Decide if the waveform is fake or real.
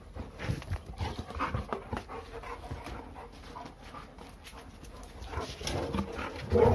real